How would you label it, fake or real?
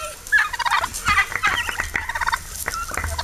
real